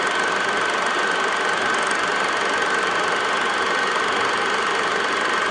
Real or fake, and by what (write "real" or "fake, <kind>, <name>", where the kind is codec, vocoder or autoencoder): real